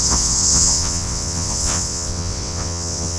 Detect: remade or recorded remade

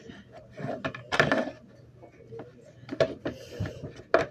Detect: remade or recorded recorded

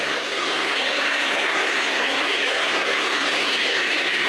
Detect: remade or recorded remade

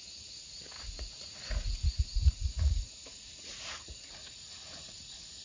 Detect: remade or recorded remade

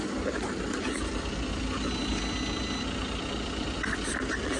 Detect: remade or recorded recorded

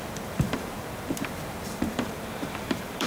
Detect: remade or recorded remade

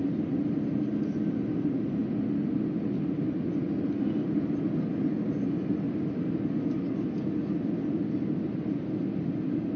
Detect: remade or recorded recorded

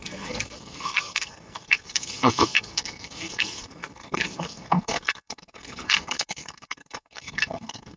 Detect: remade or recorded remade